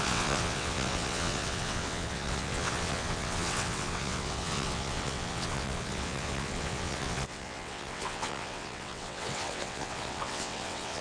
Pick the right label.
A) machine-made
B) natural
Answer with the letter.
A